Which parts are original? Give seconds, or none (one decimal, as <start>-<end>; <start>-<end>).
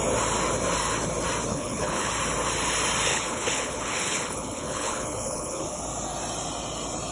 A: 0.0-1.5; 2.1-3.1; 5.8-7.1